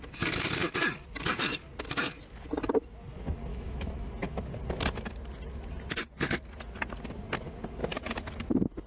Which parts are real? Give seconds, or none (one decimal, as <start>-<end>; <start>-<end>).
0.0-3.5; 4.1-8.9